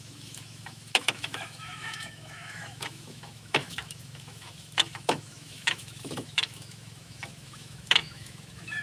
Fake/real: fake